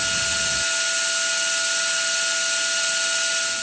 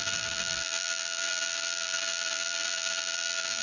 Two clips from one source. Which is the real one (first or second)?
first